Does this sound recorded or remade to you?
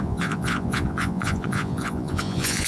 remade